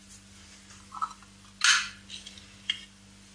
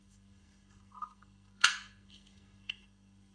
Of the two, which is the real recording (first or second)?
first